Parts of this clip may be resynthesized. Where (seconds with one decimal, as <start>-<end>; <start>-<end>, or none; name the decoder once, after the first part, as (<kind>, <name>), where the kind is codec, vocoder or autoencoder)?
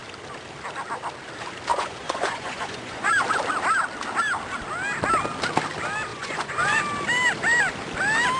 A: 1.7-3.1 (vocoder, Vocos); 6.1-6.8